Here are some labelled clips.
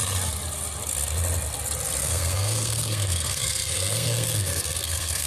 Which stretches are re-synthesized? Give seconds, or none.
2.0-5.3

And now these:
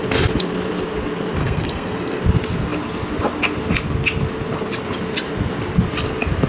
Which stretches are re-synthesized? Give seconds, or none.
1.4-2.2

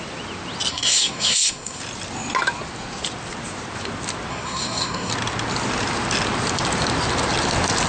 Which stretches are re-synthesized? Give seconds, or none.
0.7-1.8; 4.3-5.1

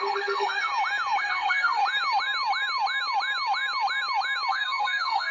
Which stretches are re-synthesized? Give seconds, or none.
0.0-0.7; 1.2-1.8; 4.5-5.3

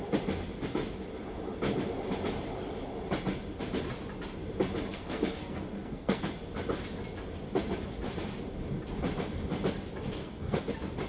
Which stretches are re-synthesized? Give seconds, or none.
4.9-6.3; 10.2-10.7

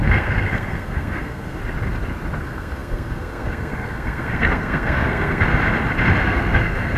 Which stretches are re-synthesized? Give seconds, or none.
0.0-1.6; 2.4-5.5; 6.2-7.0

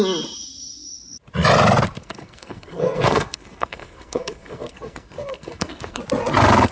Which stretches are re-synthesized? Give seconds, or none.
2.0-6.0

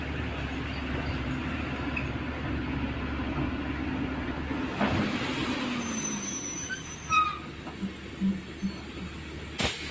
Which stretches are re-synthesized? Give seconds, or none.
none